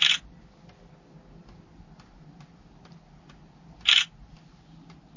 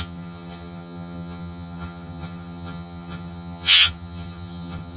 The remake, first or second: second